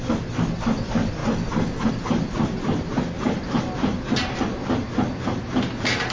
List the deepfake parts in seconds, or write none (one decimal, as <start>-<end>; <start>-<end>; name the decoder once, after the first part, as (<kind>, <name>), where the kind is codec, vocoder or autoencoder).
none